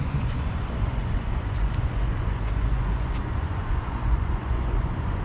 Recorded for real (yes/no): no